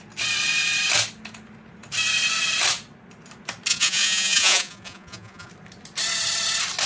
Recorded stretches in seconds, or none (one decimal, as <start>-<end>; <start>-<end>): 0.0-3.7; 5.5-6.9